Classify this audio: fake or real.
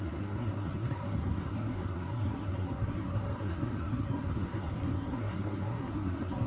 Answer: fake